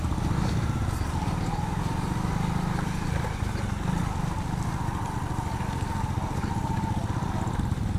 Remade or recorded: recorded